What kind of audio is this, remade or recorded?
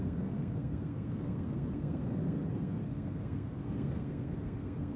remade